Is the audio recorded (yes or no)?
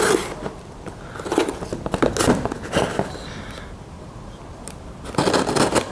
yes